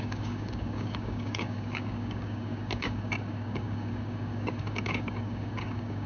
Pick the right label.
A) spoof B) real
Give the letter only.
A